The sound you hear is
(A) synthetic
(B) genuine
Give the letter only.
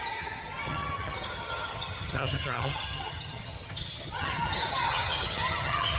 A